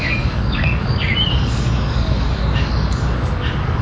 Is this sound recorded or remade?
remade